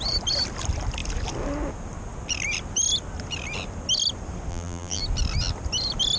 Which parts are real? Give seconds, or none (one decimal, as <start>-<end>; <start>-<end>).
0.0-4.5; 5.0-6.2

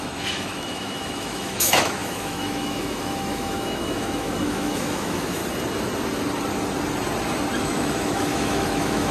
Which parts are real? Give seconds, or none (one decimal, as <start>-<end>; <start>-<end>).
5.4-7.6

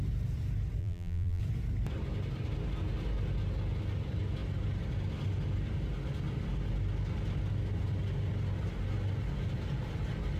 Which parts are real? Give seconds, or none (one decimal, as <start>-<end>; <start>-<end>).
0.0-0.8; 1.4-10.4

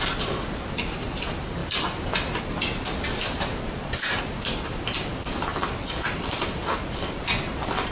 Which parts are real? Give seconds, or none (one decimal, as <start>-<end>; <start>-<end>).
0.0-7.9